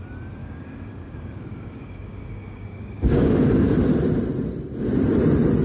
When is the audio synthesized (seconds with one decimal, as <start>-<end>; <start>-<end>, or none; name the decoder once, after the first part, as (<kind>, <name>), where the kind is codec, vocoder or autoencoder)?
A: 0.4-3.7 (codec, DAC)